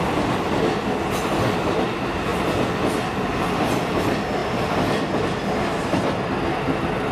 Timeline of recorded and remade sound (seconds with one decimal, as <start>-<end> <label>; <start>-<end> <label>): 0.0-7.1 recorded